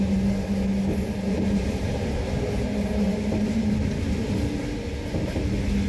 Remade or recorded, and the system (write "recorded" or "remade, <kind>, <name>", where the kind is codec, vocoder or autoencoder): recorded